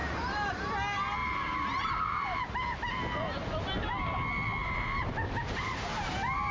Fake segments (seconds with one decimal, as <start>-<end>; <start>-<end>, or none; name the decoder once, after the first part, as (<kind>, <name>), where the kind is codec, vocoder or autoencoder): 0.0-0.5 (vocoder, BigVGAN v2); 1.2-2.5; 4.6-6.1

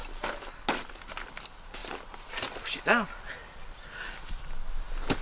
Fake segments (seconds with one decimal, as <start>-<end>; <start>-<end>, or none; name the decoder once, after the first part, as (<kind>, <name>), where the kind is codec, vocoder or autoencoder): none

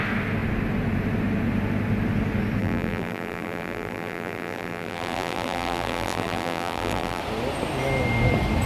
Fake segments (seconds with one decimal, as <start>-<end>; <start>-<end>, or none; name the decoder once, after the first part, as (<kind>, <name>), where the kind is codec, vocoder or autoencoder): 2.6-7.2 (vocoder, BigVGAN v2)

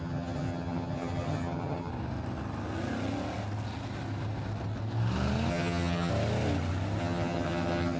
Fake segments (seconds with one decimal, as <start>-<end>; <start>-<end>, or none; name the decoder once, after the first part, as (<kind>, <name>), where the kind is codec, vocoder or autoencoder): 0.0-1.9 (vocoder, HiFi-GAN); 5.5-6.1; 7.0-8.0

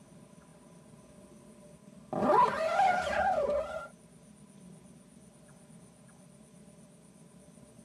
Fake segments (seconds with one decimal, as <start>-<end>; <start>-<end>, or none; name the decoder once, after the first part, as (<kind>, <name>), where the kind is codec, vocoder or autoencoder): none